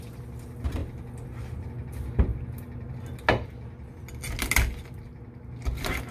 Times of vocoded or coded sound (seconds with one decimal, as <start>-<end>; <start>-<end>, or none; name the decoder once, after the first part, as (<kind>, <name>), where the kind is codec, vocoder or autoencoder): none